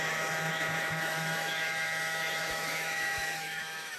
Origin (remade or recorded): remade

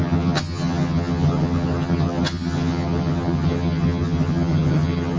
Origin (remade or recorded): remade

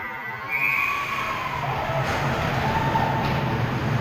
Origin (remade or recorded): recorded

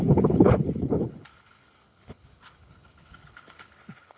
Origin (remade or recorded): remade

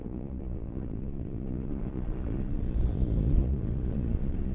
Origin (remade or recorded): remade